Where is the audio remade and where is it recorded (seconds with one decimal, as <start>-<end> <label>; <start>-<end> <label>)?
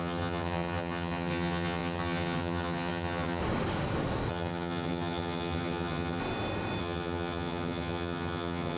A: 0.0-3.4 remade; 3.4-4.3 recorded; 4.3-6.2 remade; 6.2-6.8 recorded; 6.8-8.8 remade